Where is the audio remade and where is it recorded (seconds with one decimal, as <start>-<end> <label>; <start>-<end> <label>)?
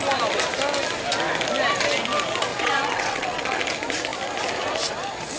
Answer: 0.0-2.5 recorded; 2.5-3.6 remade; 3.6-5.4 recorded